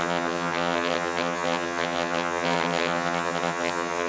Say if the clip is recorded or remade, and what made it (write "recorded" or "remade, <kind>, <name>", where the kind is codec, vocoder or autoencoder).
remade, vocoder, HiFi-GAN